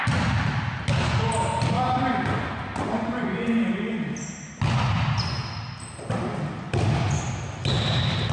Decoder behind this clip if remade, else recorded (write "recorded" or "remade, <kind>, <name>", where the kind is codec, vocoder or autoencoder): recorded